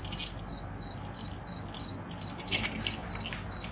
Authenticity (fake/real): real